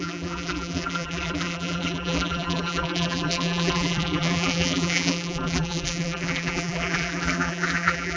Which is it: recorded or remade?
remade